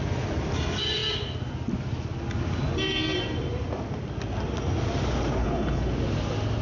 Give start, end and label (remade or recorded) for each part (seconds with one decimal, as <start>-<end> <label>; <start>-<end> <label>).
0.0-5.4 recorded; 5.4-5.9 remade; 5.9-6.6 recorded